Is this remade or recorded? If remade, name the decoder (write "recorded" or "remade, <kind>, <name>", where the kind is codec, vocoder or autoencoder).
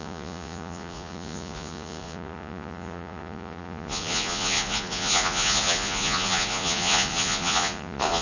remade, vocoder, Vocos